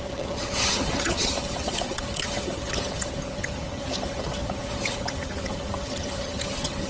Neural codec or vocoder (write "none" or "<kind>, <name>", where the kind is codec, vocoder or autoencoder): vocoder, HiFi-GAN